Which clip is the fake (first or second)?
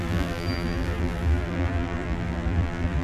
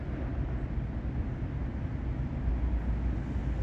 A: first